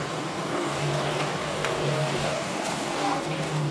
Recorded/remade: remade